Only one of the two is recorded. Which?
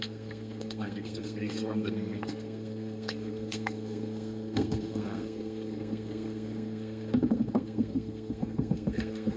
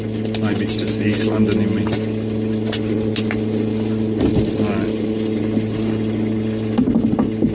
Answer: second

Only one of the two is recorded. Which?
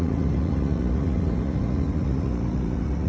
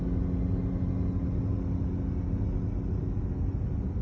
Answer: second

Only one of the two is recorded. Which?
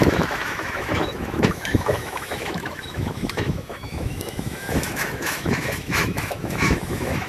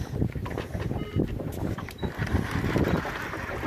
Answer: second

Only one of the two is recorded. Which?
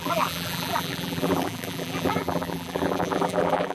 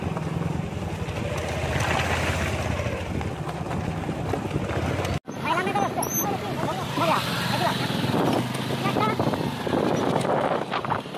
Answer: second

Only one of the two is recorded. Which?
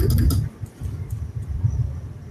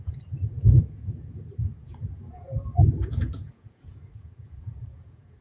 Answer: first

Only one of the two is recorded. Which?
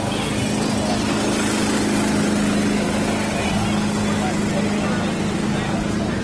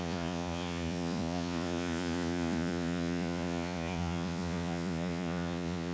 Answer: first